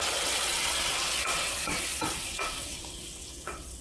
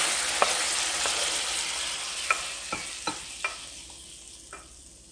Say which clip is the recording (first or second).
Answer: second